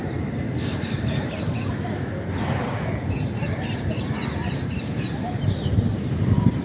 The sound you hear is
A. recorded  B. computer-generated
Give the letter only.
B